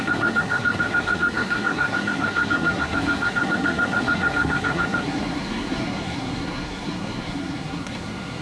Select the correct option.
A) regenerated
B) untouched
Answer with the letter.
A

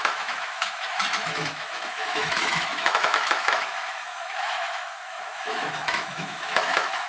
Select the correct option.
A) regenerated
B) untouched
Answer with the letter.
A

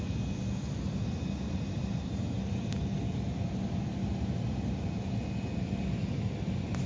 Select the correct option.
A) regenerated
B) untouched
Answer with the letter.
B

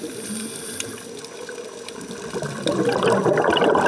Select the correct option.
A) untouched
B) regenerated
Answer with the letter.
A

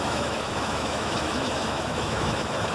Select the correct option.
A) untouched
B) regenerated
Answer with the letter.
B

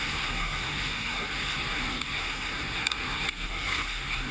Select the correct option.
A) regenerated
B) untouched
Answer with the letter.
A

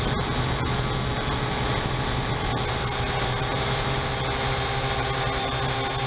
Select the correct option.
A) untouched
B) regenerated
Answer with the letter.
A